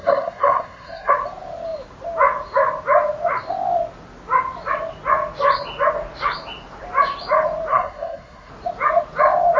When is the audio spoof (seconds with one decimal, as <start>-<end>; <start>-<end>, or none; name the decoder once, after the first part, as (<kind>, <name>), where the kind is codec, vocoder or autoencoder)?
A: 0.0-1.1 (codec, SNAC); 7.7-8.5